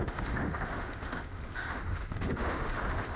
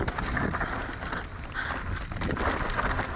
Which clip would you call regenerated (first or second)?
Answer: first